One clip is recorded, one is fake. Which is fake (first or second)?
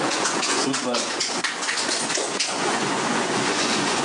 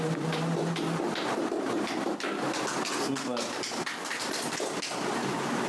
first